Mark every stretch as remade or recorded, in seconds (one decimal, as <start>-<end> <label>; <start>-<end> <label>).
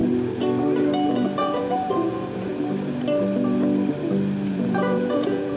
0.0-1.4 recorded; 1.4-2.5 remade; 2.5-4.5 recorded; 4.5-5.6 remade